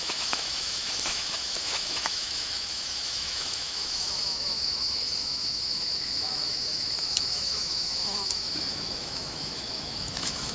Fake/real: fake